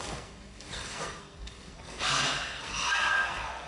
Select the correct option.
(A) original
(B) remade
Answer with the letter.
B